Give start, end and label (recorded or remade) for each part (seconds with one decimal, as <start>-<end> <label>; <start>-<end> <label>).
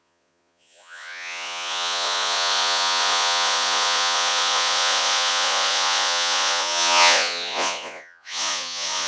0.0-9.1 remade